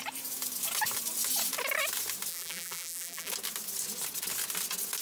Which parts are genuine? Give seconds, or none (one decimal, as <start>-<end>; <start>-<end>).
0.0-2.3; 3.3-5.0